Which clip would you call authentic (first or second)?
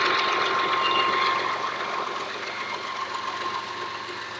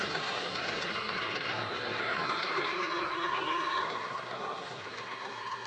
first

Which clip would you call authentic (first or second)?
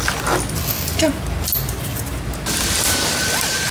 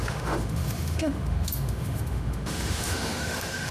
first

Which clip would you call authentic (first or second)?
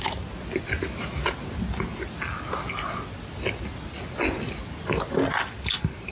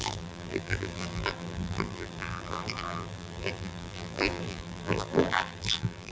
first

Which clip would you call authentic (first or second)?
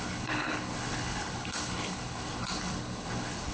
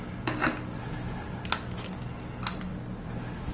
second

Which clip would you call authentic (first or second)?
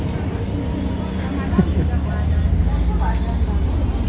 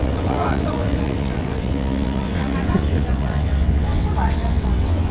first